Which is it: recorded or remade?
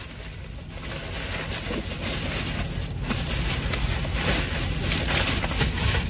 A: recorded